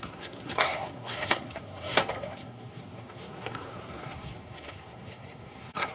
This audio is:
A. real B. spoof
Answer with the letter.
B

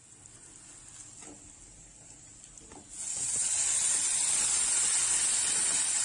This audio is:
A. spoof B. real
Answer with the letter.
B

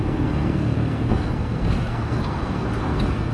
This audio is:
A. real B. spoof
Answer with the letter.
B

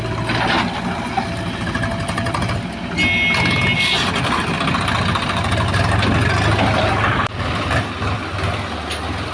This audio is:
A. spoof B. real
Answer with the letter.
B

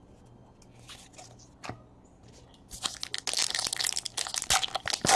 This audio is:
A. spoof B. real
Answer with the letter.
B